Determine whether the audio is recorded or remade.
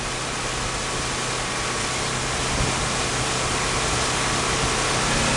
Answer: recorded